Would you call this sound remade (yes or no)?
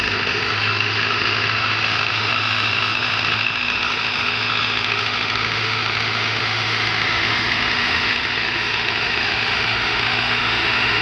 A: yes